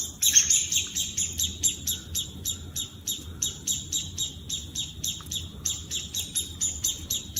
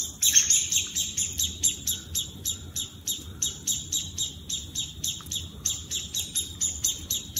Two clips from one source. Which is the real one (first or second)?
first